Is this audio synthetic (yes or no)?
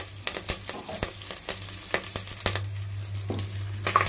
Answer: no